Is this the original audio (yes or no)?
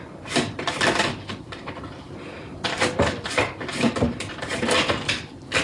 no